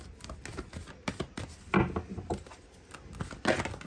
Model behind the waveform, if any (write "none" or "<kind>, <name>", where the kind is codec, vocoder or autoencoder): none